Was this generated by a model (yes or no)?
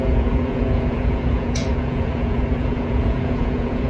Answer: yes